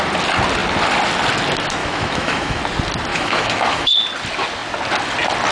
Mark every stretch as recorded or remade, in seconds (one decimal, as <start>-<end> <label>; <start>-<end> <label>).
0.0-1.8 recorded; 1.8-2.6 remade; 2.6-3.1 recorded; 3.1-3.9 remade; 3.9-5.5 recorded